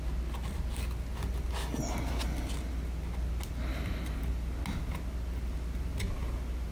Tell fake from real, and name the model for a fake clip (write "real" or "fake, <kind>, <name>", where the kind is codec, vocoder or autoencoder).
real